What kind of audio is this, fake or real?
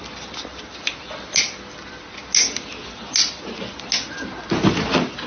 real